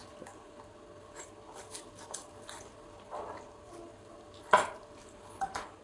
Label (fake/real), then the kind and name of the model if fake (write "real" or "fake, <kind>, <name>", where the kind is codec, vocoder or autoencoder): real